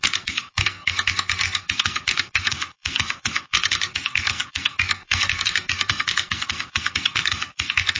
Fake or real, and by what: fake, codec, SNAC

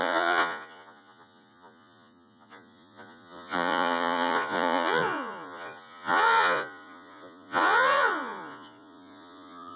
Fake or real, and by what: fake, vocoder, Vocos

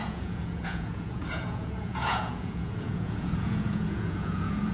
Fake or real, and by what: fake, vocoder, Vocos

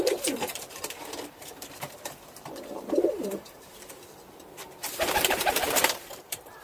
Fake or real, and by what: fake, vocoder, BigVGAN v2